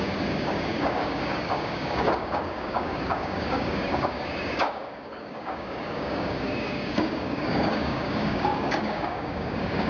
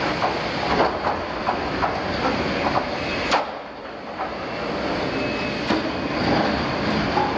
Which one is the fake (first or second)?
first